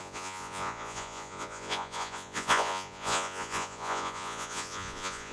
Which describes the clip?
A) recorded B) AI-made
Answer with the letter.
B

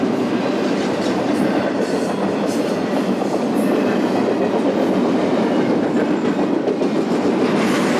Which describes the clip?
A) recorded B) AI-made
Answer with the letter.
A